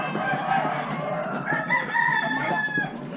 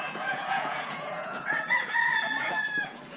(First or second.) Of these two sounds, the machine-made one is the second